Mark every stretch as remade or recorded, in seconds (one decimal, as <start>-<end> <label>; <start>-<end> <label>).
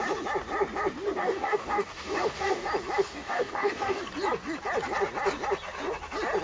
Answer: 0.0-1.2 recorded; 1.2-2.7 remade; 2.7-3.1 recorded; 3.1-4.0 remade; 4.0-6.4 recorded